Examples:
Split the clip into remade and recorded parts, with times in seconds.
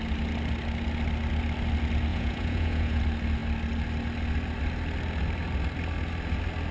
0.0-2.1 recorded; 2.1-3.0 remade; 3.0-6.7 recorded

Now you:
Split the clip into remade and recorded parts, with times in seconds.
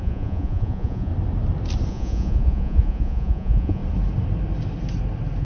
0.0-1.1 remade; 1.1-1.9 recorded; 1.9-3.8 remade; 3.8-5.4 recorded